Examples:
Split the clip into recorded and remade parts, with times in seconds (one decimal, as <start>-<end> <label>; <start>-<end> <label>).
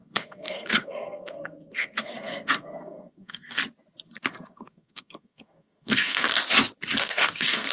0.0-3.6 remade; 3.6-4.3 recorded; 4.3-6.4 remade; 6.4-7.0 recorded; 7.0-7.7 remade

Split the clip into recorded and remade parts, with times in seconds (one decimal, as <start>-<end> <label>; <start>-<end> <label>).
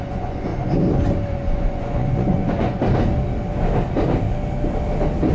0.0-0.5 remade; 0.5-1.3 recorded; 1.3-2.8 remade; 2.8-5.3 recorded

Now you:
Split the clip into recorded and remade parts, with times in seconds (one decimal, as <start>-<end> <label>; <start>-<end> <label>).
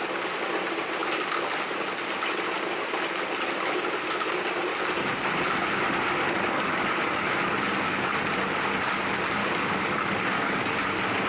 0.0-6.2 recorded; 6.2-8.1 remade; 8.1-9.4 recorded; 9.4-10.8 remade; 10.8-11.3 recorded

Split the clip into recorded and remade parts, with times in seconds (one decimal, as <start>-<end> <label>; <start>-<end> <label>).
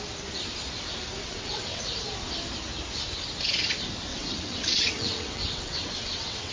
0.0-1.2 recorded; 1.2-1.8 remade; 1.8-4.1 recorded; 4.1-6.5 remade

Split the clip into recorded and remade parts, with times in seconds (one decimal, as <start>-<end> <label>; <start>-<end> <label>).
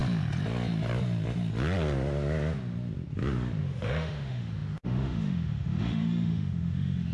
0.0-3.6 recorded; 3.6-7.1 remade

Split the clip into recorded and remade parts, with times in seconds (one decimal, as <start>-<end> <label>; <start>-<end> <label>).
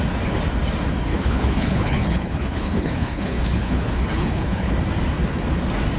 0.0-1.1 recorded; 1.1-4.7 remade; 4.7-6.0 recorded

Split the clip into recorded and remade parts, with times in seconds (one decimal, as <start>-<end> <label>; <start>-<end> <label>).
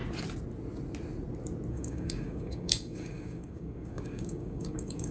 0.0-1.7 recorded; 1.7-5.1 remade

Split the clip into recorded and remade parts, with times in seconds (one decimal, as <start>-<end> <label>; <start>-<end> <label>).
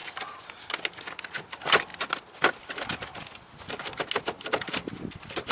0.0-5.5 recorded